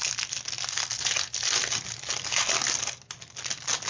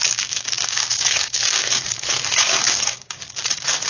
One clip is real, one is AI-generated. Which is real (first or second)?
first